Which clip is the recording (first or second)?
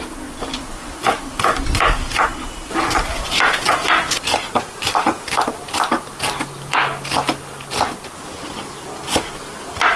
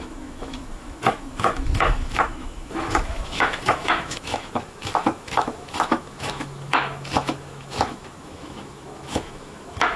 first